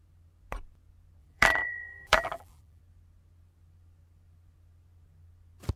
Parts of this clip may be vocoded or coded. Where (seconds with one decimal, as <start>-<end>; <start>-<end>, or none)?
1.2-2.8